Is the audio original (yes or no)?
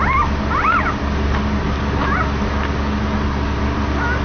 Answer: yes